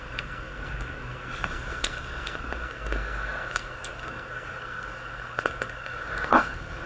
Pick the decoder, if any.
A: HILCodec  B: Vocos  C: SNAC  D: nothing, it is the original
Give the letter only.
C